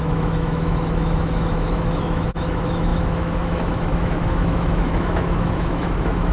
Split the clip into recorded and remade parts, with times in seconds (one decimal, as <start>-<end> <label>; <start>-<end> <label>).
0.0-6.3 remade